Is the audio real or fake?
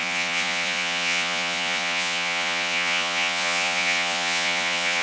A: fake